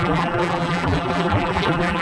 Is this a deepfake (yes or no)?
yes